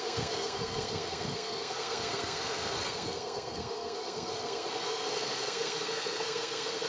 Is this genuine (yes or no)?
no